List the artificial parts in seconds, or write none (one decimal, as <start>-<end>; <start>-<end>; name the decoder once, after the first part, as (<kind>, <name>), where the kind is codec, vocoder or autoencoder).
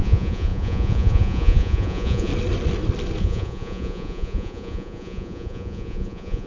0.0-2.3 (vocoder, Vocos); 3.2-6.5